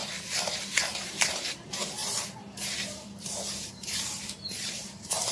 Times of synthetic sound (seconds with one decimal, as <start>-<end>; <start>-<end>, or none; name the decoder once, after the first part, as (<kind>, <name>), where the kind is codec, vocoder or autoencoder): 0.0-5.3 (vocoder, BigVGAN v2)

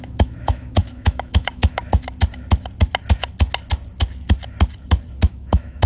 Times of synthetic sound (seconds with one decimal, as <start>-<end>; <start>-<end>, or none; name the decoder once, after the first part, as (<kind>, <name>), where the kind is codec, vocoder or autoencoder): 0.0-1.8 (autoencoder, DAC-VAE); 5.3-5.9

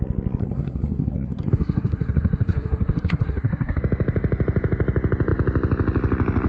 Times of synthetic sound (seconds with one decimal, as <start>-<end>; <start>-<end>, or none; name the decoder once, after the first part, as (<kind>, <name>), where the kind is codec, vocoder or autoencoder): 0.4-3.8 (codec, SNAC)

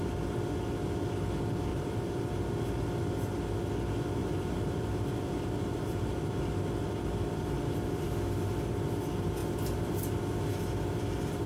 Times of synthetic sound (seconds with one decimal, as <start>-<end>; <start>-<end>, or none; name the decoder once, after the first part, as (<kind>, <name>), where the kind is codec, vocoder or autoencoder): 1.7-2.3 (vocoder, BigVGAN v2); 4.2-6.4; 9.4-10.0

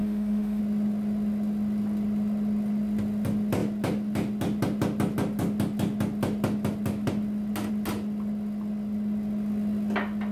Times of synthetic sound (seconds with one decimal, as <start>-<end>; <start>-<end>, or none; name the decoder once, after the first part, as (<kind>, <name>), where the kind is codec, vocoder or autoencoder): 0.0-0.6 (autoencoder, DAC-VAE)

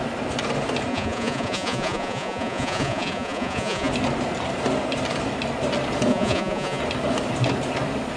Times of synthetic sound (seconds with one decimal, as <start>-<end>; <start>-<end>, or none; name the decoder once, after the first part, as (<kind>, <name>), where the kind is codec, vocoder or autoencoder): 0.9-3.9 (vocoder, Vocos); 6.1-6.8